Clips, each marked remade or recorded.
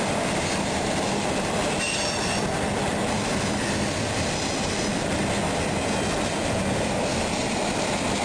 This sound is recorded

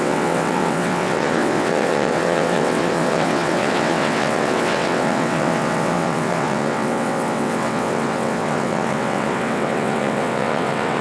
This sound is remade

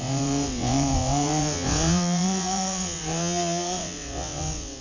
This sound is remade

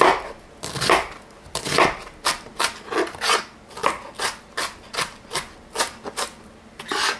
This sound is recorded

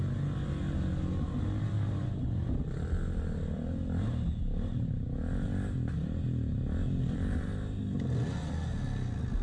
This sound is recorded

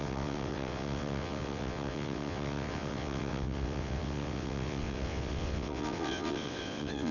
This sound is remade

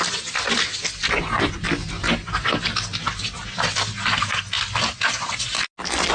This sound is recorded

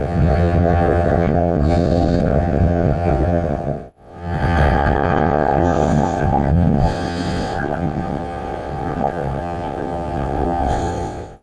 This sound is remade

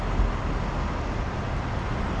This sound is recorded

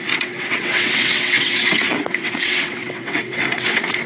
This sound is remade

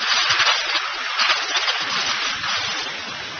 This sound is recorded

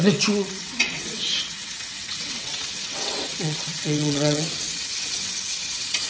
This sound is remade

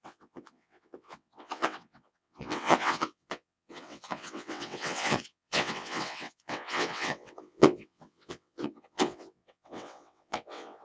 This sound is remade